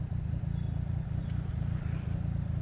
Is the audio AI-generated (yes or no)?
no